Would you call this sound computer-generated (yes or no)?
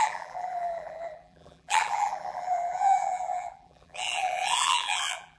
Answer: yes